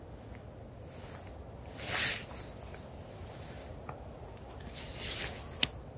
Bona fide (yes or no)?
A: yes